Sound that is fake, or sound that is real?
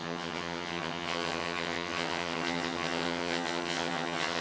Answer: fake